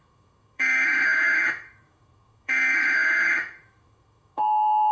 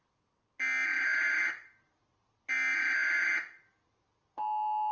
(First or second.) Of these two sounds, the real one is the second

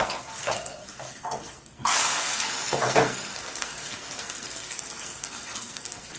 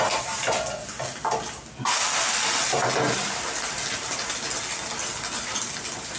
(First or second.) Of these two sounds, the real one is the second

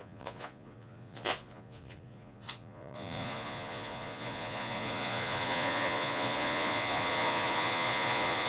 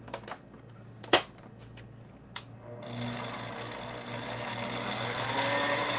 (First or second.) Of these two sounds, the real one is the second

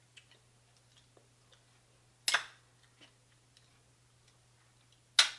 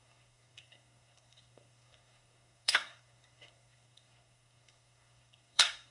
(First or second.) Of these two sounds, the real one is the first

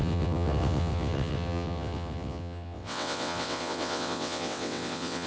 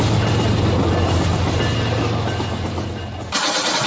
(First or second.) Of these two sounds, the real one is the second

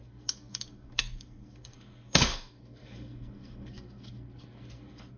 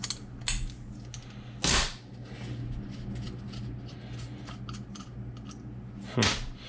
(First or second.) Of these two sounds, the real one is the second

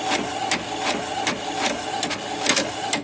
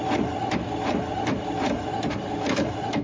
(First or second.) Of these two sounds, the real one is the first